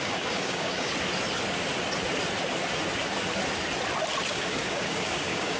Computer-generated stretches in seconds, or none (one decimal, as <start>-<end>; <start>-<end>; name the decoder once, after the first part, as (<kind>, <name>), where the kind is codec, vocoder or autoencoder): 0.0-0.9 (codec, DAC); 4.3-5.6